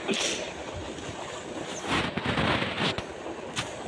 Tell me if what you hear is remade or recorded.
recorded